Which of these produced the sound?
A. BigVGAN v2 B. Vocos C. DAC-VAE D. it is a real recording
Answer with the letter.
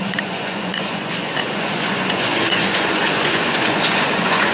B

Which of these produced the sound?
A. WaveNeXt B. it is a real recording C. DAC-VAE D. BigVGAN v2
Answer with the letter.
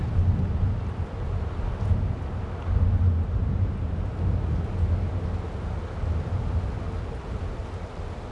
B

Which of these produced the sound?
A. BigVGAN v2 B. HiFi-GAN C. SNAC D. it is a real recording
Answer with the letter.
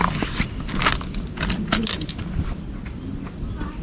D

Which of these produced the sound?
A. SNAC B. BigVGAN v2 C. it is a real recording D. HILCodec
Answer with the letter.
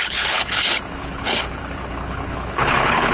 D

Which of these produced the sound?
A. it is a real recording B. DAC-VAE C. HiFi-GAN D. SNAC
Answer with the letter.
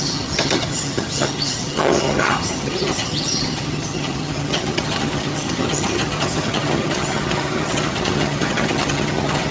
C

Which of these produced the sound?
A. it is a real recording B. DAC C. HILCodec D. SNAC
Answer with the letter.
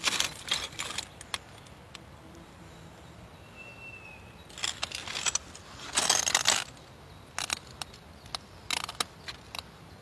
A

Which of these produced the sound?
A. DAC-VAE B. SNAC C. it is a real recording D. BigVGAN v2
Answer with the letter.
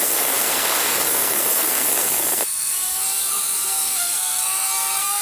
B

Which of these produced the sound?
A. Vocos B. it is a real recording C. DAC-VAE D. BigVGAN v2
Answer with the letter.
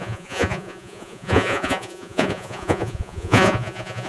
A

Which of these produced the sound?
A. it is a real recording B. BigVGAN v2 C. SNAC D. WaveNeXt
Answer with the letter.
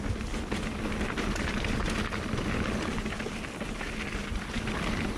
A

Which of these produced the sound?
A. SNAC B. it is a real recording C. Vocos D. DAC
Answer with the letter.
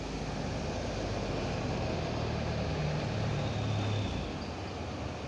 B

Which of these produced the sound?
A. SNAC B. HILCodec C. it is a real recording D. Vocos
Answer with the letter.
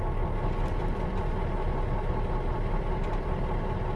C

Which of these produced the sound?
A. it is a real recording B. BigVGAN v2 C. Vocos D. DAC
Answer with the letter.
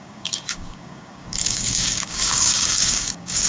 D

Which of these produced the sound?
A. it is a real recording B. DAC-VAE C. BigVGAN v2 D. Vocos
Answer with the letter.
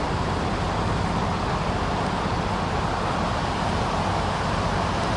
C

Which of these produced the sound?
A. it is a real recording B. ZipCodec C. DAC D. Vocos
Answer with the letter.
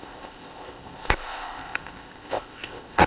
B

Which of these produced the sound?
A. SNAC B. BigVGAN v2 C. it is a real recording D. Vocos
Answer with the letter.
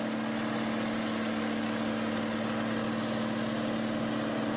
C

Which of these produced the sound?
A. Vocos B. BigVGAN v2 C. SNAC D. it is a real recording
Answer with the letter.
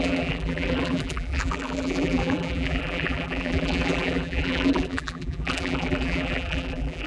B